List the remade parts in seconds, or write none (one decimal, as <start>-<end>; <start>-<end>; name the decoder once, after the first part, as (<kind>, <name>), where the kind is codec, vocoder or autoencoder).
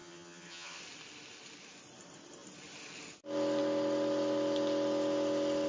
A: 0.0-0.8 (vocoder, HiFi-GAN)